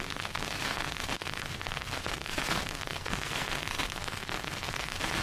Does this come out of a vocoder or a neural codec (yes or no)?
yes